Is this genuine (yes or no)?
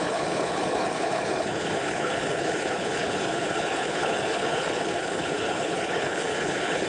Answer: no